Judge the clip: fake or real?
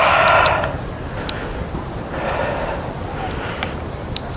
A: real